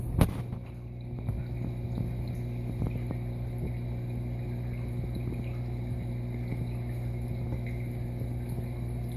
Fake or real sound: real